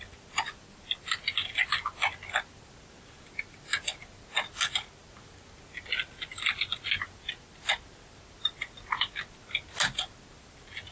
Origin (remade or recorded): recorded